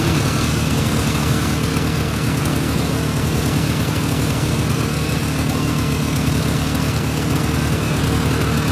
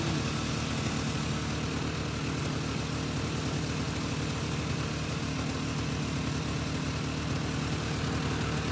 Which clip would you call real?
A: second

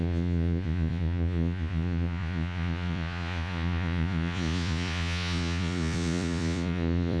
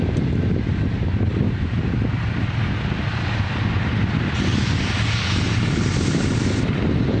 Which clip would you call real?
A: second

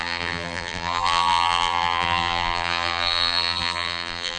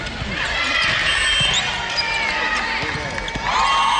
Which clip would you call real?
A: second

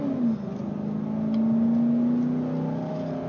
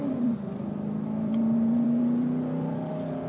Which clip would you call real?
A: first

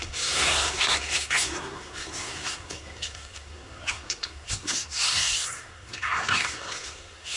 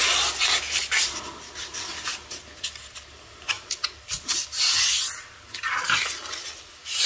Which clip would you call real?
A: second